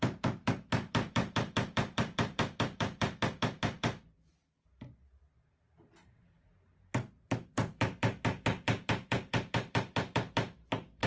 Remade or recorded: remade